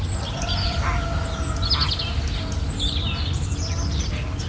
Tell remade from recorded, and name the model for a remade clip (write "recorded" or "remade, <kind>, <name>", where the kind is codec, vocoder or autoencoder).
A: recorded